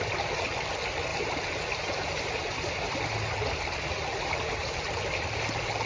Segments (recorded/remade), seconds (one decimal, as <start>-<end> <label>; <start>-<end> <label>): 0.0-1.1 recorded; 1.1-2.9 remade; 2.9-5.9 recorded

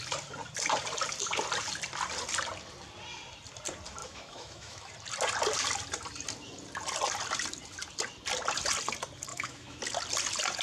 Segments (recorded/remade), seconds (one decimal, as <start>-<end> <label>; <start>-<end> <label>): 0.0-4.0 recorded; 4.0-4.9 remade; 4.9-9.3 recorded; 9.3-9.8 remade; 9.8-10.6 recorded